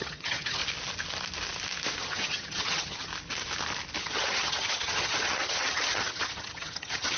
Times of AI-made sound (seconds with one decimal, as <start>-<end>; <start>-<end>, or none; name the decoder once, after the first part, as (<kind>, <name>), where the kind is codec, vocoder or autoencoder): 0.0-0.6 (vocoder, HiFi-GAN); 2.0-3.1; 4.0-7.2